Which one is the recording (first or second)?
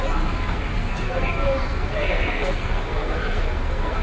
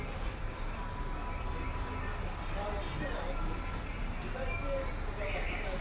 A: second